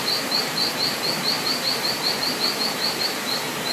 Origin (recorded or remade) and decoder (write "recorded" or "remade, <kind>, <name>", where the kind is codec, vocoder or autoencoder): recorded